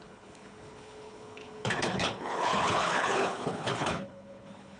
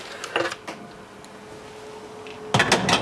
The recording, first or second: second